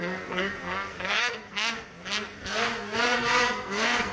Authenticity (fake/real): fake